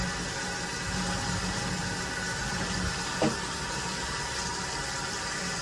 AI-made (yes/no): no